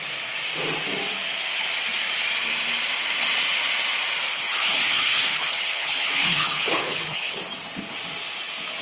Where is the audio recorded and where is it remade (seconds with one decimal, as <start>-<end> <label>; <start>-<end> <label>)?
0.0-4.3 recorded; 4.3-7.4 remade; 7.4-8.8 recorded